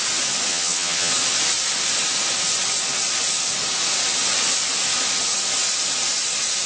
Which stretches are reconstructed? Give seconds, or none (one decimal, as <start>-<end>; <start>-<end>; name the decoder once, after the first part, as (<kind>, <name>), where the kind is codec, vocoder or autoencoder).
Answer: 0.5-1.1 (vocoder, HiFi-GAN)